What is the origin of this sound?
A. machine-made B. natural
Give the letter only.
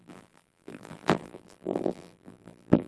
A